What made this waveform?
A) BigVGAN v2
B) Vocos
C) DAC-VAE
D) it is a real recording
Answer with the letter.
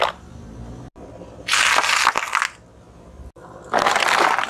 D